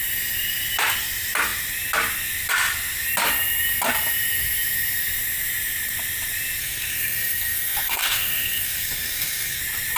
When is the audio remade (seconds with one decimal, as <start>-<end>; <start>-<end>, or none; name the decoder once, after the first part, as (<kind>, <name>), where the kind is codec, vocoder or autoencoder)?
6.6-9.6 (codec, SNAC)